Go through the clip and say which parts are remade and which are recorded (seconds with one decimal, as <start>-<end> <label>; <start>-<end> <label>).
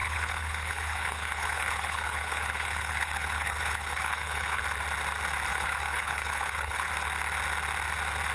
0.0-4.6 remade; 4.6-5.5 recorded; 5.5-6.9 remade; 6.9-8.3 recorded